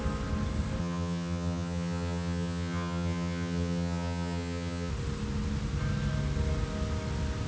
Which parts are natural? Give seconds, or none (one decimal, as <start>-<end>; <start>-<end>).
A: 0.0-0.8; 4.9-7.5